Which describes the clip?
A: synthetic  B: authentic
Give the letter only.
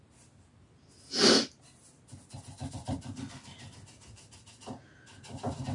B